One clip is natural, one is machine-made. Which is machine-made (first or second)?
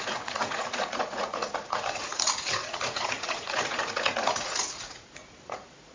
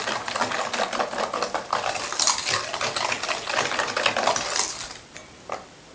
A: first